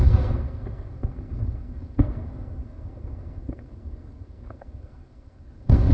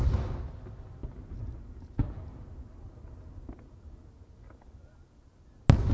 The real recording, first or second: second